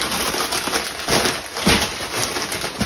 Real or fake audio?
real